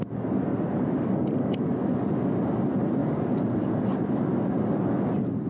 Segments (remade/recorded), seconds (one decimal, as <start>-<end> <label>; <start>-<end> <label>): 0.0-0.5 recorded; 0.5-2.1 remade; 2.1-3.0 recorded; 3.0-4.2 remade; 4.2-5.5 recorded